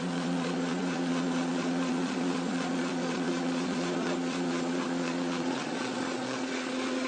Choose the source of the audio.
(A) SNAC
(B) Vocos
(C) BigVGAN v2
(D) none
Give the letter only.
B